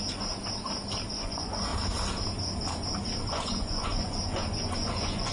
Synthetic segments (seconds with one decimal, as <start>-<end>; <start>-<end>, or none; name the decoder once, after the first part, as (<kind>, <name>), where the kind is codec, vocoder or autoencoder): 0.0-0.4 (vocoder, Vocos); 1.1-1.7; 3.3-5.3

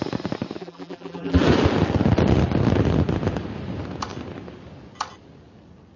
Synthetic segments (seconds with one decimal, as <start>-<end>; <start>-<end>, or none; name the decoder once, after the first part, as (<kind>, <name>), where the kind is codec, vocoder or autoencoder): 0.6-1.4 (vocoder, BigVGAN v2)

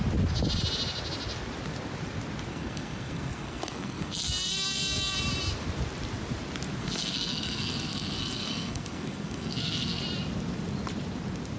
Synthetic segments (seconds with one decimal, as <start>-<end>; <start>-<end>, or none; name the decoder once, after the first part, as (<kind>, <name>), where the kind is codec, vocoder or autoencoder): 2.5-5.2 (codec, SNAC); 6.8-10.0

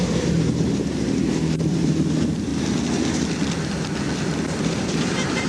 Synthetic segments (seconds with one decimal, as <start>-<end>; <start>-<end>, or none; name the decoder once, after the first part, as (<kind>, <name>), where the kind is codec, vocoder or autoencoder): 0.0-2.5 (vocoder, BigVGAN v2); 4.5-5.5

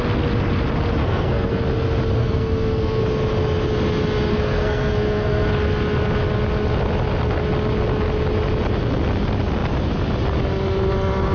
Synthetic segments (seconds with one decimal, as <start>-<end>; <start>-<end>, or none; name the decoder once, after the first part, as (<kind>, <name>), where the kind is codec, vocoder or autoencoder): 1.0-1.6 (codec, SNAC); 2.2-3.0; 4.3-5.5

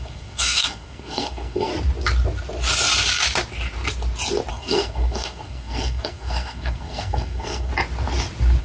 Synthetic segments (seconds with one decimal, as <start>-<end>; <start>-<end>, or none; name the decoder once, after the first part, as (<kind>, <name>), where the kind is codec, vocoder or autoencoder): 0.0-1.7 (codec, SNAC); 4.5-7.7

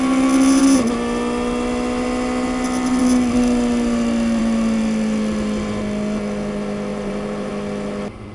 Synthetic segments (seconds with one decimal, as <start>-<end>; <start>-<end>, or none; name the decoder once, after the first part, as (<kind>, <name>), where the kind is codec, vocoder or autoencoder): 6.9-7.5 (vocoder, BigVGAN v2)